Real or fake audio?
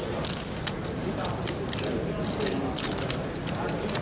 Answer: real